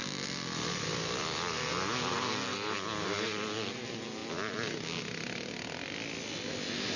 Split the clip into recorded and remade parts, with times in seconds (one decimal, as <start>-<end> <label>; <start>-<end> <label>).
0.0-7.0 recorded